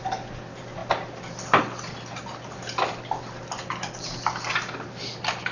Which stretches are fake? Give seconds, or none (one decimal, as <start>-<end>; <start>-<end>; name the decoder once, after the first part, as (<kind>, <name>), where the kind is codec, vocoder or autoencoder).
none